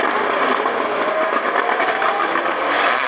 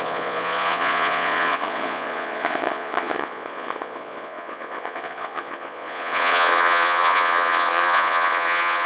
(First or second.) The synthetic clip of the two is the second